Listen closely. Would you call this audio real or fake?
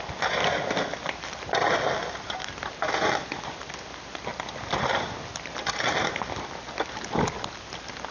real